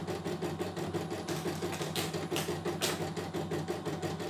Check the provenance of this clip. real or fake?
real